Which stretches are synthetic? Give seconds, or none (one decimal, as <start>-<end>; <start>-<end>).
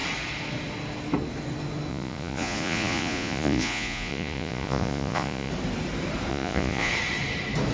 1.9-5.5; 6.3-6.9